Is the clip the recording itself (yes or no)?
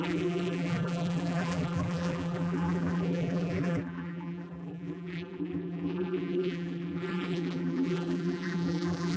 no